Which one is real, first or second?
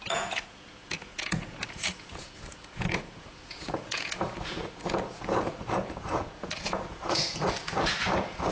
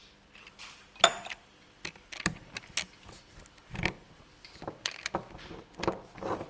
second